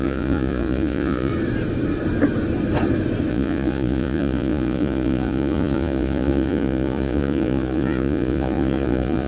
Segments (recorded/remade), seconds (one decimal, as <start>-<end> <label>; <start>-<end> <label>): 0.0-1.3 remade; 1.3-3.3 recorded; 3.3-9.3 remade